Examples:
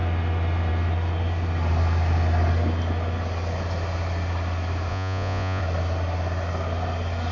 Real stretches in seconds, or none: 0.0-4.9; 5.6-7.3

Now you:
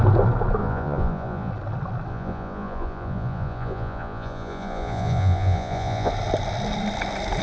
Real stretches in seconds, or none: 0.0-0.6; 1.5-2.1; 6.1-7.4